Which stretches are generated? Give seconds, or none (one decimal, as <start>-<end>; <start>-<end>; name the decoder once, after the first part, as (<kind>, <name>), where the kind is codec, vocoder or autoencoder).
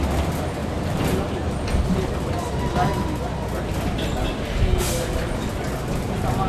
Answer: 0.6-2.0 (vocoder, BigVGAN v2)